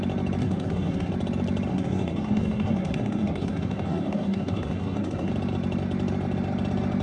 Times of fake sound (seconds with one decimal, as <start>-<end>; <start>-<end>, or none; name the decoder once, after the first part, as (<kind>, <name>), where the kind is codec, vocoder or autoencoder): 0.4-1.1 (codec, SNAC); 1.7-5.3